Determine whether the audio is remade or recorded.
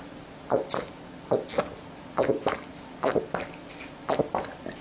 recorded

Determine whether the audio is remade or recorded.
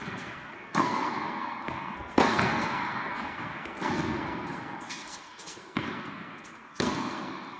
remade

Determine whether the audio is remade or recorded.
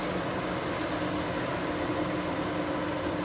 recorded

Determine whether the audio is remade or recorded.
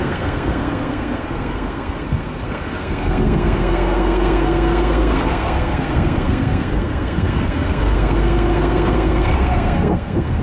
remade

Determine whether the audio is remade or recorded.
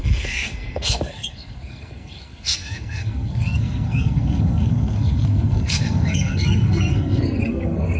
remade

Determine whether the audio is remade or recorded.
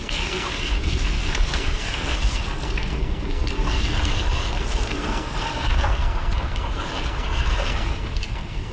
remade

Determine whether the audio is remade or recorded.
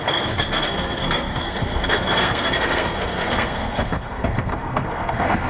remade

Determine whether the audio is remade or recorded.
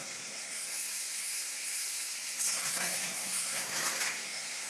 remade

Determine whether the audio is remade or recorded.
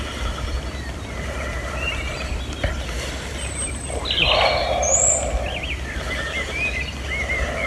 recorded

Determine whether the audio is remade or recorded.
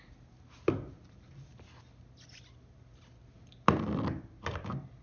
recorded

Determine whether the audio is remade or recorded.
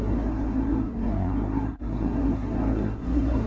remade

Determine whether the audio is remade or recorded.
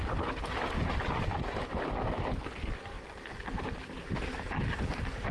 recorded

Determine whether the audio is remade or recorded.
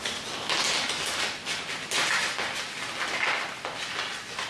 recorded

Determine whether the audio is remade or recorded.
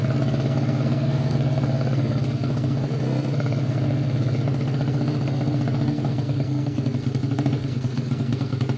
remade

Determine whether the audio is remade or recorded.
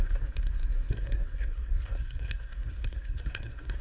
remade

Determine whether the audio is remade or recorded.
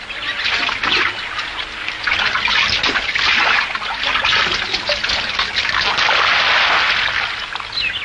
recorded